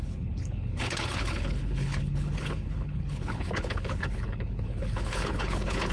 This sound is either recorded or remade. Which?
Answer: remade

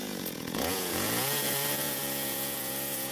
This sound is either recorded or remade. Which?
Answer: remade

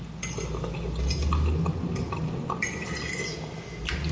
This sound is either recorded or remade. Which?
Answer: recorded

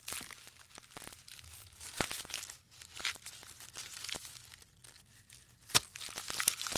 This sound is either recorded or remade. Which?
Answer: recorded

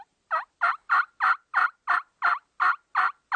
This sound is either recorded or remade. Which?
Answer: recorded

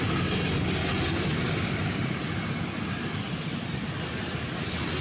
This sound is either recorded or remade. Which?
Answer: recorded